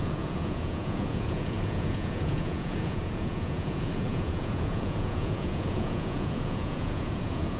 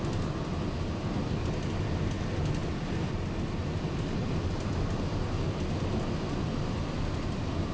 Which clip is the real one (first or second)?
second